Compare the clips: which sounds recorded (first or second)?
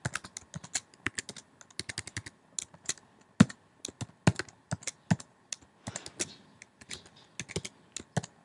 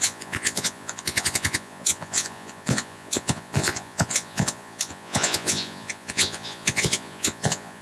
first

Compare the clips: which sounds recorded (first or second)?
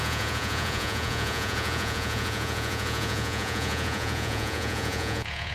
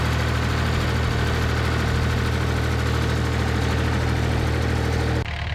second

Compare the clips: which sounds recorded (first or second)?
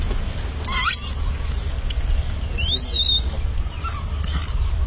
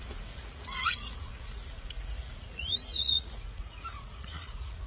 first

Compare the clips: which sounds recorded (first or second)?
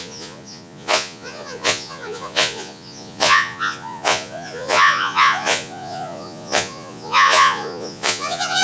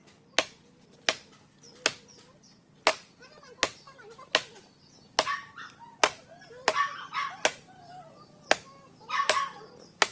second